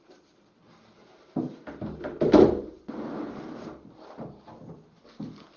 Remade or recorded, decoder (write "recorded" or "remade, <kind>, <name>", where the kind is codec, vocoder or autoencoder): recorded